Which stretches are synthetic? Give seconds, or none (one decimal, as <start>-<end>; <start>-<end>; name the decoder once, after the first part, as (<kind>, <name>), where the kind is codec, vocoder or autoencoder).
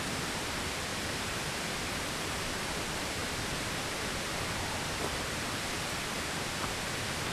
0.0-7.3 (vocoder, BigVGAN v2)